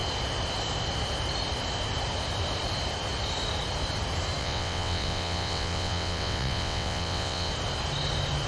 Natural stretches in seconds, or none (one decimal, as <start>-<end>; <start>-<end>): 0.0-4.4; 7.5-8.5